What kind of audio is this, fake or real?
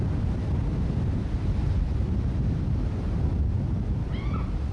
real